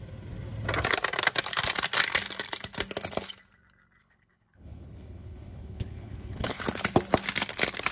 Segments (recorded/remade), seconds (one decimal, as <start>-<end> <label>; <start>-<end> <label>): 0.0-4.0 recorded; 4.0-6.6 remade; 6.6-7.9 recorded